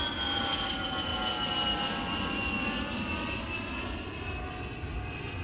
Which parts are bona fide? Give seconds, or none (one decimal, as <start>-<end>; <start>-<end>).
0.0-5.4